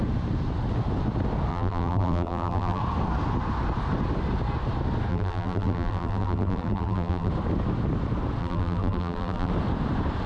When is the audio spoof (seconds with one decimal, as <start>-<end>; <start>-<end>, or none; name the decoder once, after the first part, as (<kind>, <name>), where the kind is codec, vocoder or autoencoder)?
1.5-2.8 (vocoder, BigVGAN v2); 5.1-7.3; 8.4-9.5